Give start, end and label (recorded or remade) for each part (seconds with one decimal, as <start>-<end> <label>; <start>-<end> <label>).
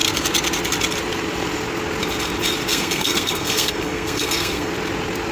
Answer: 0.0-2.7 recorded; 2.7-4.7 remade; 4.7-5.3 recorded